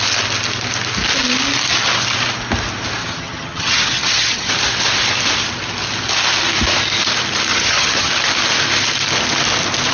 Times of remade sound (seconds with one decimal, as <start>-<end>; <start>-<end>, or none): 3.0-4.5; 7.5-8.1

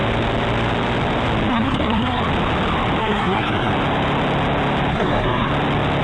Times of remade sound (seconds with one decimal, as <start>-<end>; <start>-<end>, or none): 1.5-2.2; 3.0-3.7; 4.9-5.5

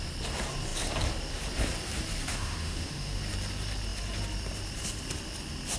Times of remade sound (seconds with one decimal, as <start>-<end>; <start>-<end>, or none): 2.3-3.2